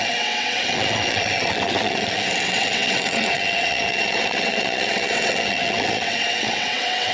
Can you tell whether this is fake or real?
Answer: fake